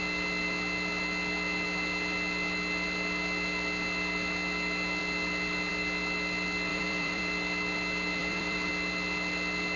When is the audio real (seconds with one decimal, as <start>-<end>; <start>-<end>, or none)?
0.0-6.7; 7.2-8.2; 8.7-9.8